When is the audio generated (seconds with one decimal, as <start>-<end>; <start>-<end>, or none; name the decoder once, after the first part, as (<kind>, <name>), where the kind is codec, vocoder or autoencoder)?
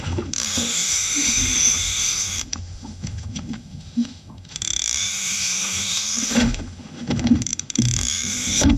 0.0-8.8 (autoencoder, DAC-VAE)